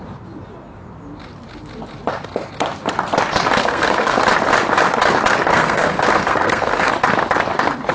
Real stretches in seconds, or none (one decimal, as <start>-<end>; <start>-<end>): 0.0-3.6; 4.2-5.5; 6.9-7.9